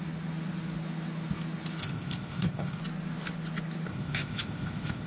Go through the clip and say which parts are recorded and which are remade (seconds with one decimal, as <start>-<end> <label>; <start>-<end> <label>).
0.0-1.8 recorded; 1.8-2.8 remade; 2.8-3.9 recorded; 3.9-5.1 remade